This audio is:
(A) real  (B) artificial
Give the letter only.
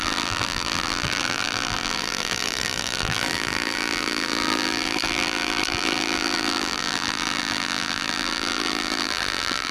B